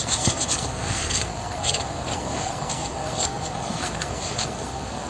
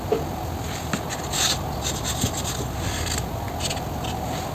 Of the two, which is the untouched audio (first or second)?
second